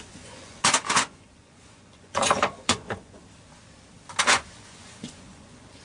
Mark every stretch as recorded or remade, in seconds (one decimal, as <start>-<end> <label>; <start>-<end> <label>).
0.0-3.2 remade; 3.2-4.3 recorded; 4.3-5.8 remade